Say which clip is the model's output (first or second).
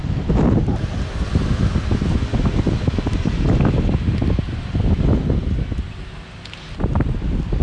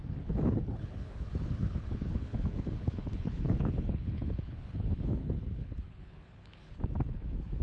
second